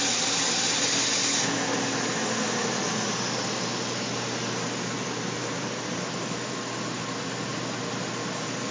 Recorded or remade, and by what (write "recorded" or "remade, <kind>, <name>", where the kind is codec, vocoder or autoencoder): recorded